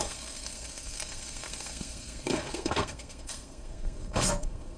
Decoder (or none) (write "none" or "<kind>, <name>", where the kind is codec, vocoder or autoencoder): codec, SNAC